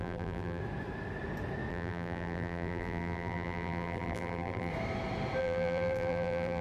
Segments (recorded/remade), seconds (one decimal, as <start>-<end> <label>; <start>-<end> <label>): 0.0-0.6 remade; 0.6-1.7 recorded; 1.7-4.7 remade; 4.7-5.4 recorded; 5.4-6.6 remade